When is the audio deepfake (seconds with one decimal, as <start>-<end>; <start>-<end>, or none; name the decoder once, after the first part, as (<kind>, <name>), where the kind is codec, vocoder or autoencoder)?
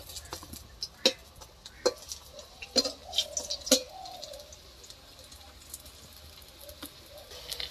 none